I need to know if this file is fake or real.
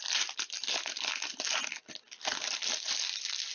real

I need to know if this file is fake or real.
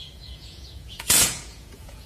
fake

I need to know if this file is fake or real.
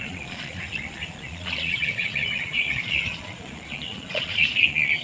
fake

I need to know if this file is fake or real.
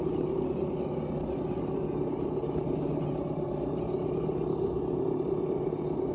real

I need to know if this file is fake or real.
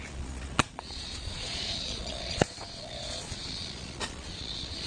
fake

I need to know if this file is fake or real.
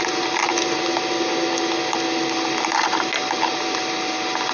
real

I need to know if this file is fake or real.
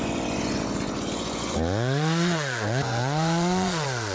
fake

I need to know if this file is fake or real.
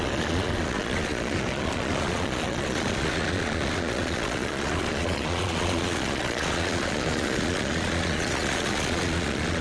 fake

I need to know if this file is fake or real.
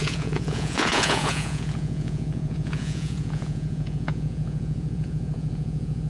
fake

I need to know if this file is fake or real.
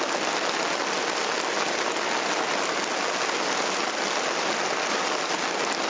real